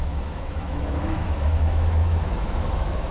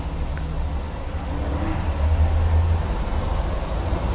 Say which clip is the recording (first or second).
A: second